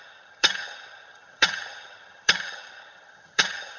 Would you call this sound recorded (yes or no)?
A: no